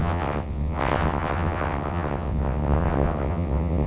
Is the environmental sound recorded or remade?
remade